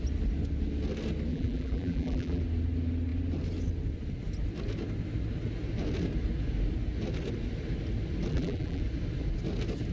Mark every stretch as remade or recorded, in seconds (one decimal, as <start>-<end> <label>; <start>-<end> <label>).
0.0-1.3 recorded; 1.3-2.4 remade; 2.4-8.3 recorded; 8.3-8.8 remade; 8.8-9.9 recorded